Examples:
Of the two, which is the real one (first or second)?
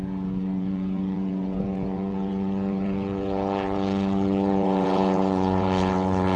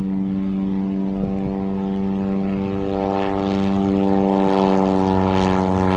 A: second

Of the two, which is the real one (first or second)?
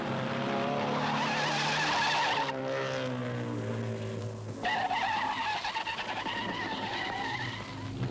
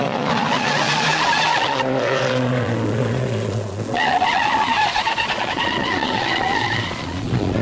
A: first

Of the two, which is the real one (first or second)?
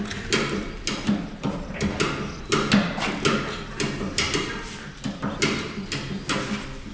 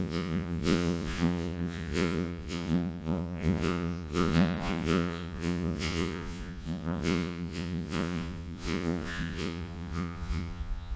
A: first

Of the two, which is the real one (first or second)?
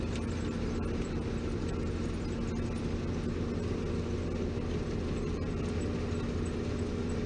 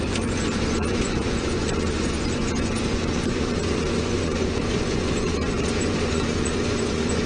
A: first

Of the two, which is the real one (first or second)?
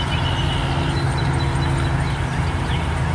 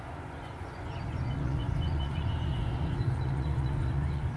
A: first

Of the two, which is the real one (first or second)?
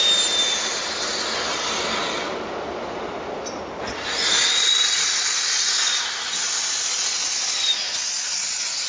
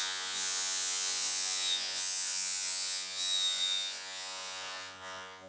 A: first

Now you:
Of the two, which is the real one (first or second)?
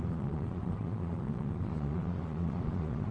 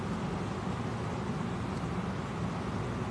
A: second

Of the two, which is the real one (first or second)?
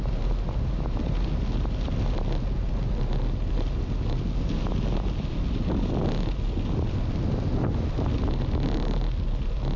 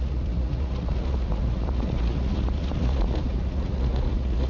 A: first